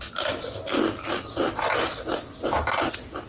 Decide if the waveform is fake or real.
real